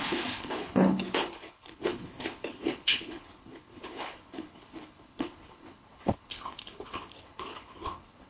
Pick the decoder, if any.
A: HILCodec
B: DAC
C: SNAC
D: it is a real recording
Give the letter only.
A